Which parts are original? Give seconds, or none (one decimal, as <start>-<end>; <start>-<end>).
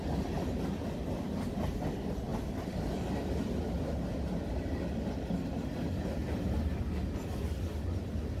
0.0-8.4